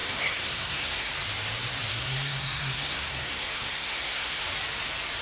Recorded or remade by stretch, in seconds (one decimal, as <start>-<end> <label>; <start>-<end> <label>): 0.0-1.1 remade; 1.1-1.9 recorded; 1.9-4.4 remade; 4.4-5.2 recorded

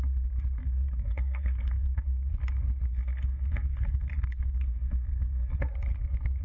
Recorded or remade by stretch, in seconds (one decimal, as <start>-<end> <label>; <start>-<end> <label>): 0.0-0.6 recorded; 0.6-2.3 remade; 2.3-2.9 recorded; 2.9-5.6 remade; 5.6-6.4 recorded

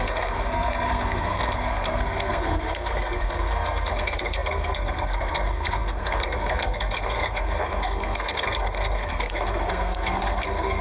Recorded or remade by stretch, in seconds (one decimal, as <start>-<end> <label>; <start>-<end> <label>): 0.0-10.8 remade

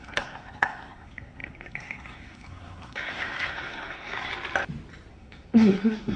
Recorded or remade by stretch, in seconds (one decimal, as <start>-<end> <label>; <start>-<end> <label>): 0.0-4.3 remade; 4.3-5.1 recorded; 5.1-6.2 remade